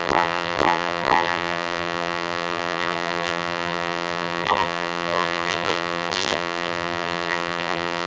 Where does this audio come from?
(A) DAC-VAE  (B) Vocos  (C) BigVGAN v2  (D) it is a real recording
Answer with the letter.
C